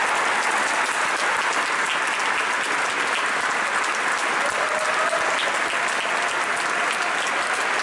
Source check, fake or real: real